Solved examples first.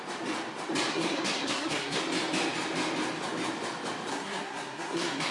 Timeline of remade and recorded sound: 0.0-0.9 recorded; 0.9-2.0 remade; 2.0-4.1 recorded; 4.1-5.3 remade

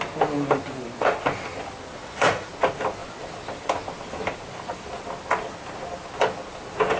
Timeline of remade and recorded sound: 0.0-2.0 recorded; 2.0-2.5 remade; 2.5-7.0 recorded

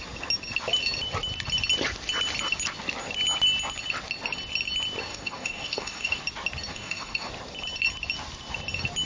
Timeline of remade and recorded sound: 0.0-5.1 recorded; 5.1-6.2 remade; 6.2-6.7 recorded; 6.7-7.3 remade; 7.3-9.1 recorded